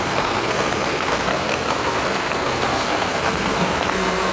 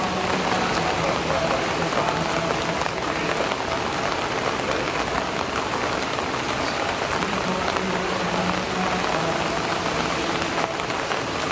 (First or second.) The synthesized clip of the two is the first